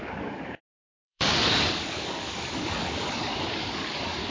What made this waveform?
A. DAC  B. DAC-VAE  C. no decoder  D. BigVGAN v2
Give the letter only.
A